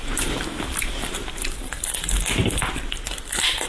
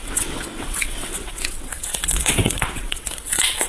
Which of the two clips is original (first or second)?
first